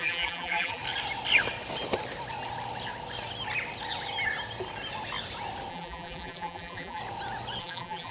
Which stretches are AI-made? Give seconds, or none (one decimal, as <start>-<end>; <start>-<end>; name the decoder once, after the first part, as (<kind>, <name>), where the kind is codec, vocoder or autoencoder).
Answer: 0.0-0.8 (vocoder, BigVGAN v2); 5.7-7.0; 7.6-8.1